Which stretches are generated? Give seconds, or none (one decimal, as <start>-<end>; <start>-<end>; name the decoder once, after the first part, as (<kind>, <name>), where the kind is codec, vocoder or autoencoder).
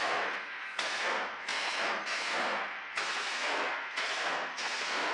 0.0-5.1 (codec, SNAC)